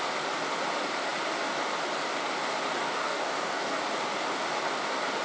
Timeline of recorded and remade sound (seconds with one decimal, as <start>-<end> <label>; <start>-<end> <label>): 0.0-2.8 recorded; 2.8-3.8 remade; 3.8-5.2 recorded